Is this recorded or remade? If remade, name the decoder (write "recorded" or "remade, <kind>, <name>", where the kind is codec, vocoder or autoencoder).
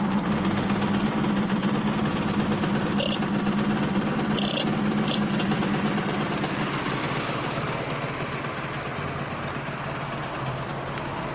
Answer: recorded